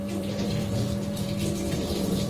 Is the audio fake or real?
fake